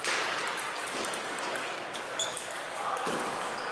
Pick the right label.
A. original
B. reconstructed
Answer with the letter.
B